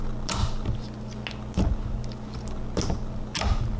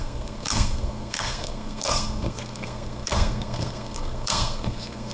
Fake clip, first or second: second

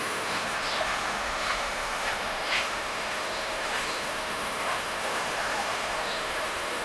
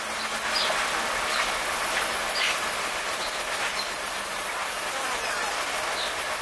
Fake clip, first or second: first